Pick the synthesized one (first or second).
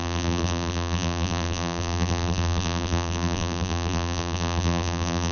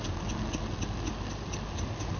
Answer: first